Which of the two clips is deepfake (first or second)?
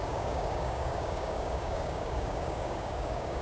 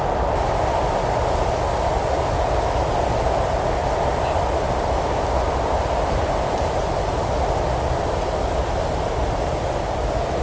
first